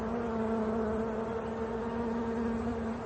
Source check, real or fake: real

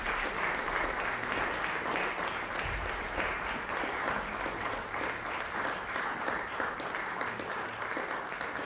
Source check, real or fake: real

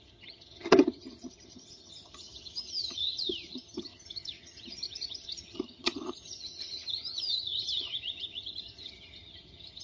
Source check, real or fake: fake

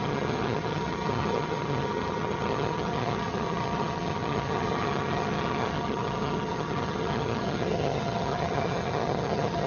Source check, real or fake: fake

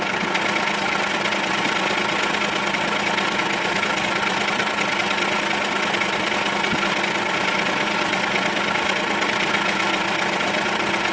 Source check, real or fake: real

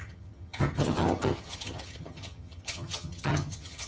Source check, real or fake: fake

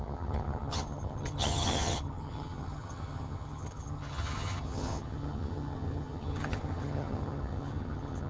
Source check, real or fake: fake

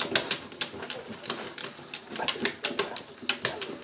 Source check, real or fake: real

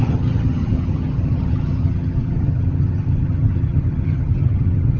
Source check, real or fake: fake